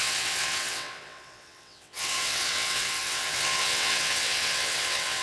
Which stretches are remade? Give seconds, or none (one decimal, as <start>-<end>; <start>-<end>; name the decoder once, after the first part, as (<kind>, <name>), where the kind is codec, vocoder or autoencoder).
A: 0.0-5.2 (vocoder, WaveNeXt)